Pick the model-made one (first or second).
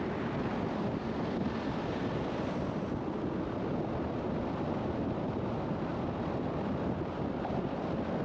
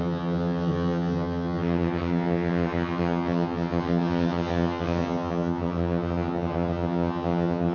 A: second